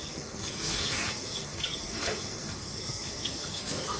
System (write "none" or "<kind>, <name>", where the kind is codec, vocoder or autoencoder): codec, SNAC